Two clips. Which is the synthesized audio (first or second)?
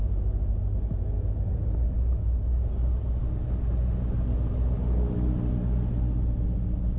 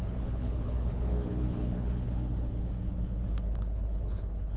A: second